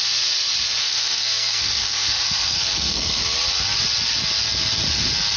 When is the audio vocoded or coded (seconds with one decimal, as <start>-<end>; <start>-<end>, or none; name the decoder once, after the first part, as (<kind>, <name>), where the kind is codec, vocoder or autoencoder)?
0.8-3.2 (codec, SNAC)